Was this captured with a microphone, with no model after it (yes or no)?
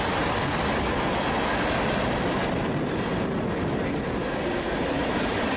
yes